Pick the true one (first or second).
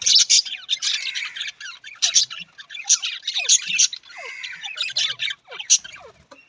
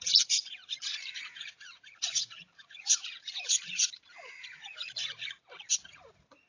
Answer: first